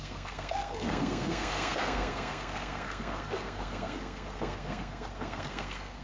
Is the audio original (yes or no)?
no